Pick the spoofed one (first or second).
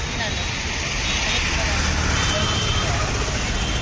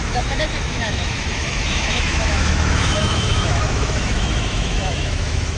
second